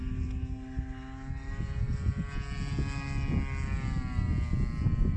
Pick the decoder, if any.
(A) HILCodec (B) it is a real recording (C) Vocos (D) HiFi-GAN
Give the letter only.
B